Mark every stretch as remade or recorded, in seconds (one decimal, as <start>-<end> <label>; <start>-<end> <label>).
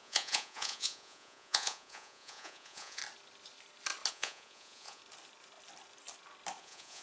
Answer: 0.0-3.0 remade; 3.0-4.1 recorded; 4.1-5.0 remade; 5.0-6.6 recorded; 6.6-7.0 remade